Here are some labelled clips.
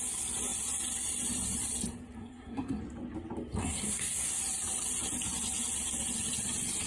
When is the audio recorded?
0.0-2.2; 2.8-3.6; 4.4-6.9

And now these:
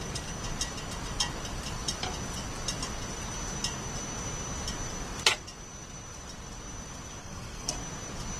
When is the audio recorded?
0.0-7.2; 7.7-8.4

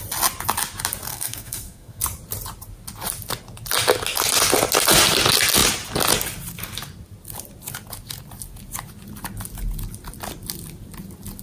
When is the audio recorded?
0.0-1.1; 2.0-11.4